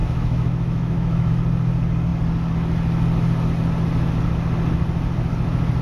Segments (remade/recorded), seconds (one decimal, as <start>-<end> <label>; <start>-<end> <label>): 0.0-1.3 remade; 1.3-5.8 recorded